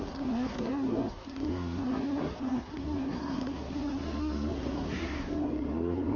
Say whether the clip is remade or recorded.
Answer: remade